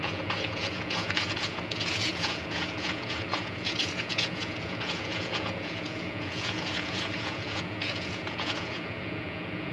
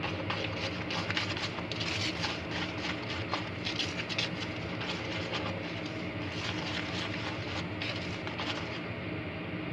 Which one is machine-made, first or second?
first